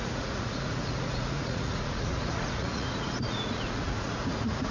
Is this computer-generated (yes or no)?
yes